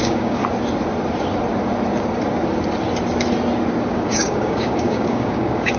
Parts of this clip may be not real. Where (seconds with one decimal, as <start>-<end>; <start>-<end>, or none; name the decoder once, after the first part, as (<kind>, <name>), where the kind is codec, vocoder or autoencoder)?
0.0-0.4 (codec, DAC); 3.9-5.8